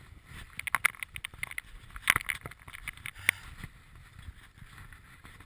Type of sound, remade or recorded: recorded